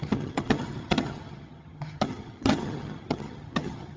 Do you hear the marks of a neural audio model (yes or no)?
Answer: yes